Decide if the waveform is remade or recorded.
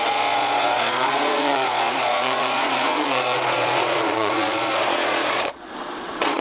remade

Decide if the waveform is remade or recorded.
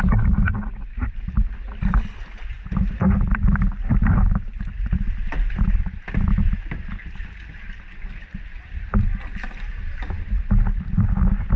recorded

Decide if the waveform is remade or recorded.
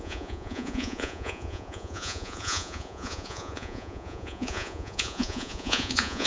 remade